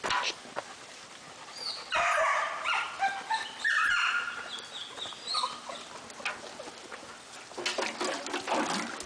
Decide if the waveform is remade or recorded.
recorded